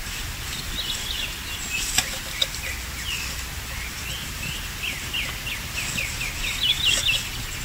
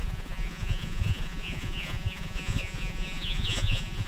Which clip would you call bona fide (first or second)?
first